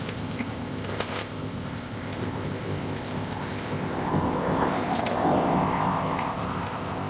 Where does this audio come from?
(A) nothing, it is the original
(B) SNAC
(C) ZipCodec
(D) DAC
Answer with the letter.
C